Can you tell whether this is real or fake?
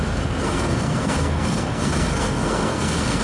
fake